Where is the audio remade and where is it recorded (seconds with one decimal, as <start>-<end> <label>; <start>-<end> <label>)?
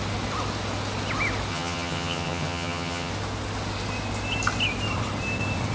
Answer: 0.0-1.5 recorded; 1.5-3.1 remade; 3.1-5.7 recorded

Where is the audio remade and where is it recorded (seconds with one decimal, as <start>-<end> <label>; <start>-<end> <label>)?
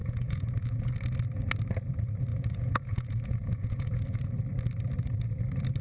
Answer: 0.0-0.9 remade; 0.9-2.3 recorded; 2.3-4.2 remade; 4.2-5.8 recorded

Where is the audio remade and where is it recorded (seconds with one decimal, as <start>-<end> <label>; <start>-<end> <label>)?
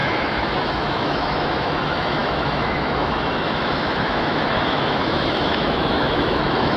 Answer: 0.0-6.8 remade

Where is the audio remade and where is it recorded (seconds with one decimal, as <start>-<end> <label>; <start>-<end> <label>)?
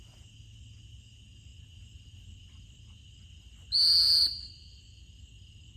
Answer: 0.0-5.8 recorded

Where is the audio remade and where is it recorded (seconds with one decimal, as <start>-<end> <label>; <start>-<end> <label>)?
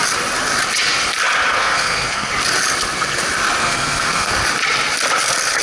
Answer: 0.0-1.6 recorded; 1.6-2.3 remade; 2.3-3.6 recorded; 3.6-4.3 remade; 4.3-5.6 recorded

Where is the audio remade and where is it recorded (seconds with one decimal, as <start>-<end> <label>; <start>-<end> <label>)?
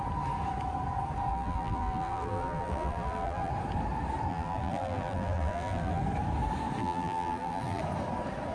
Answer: 0.0-1.3 recorded; 1.3-3.5 remade; 3.5-4.3 recorded; 4.3-6.0 remade; 6.0-6.8 recorded; 6.8-7.8 remade; 7.8-8.5 recorded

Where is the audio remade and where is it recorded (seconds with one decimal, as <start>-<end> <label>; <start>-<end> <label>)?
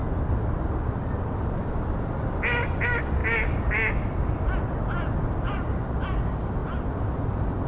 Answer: 0.0-7.7 recorded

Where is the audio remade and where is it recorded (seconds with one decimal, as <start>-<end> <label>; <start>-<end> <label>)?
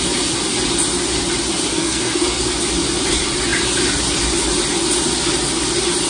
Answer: 0.0-1.7 recorded; 1.7-2.4 remade; 2.4-6.1 recorded